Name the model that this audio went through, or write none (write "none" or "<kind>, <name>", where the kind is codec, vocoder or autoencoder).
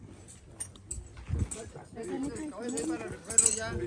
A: none